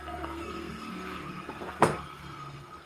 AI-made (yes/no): yes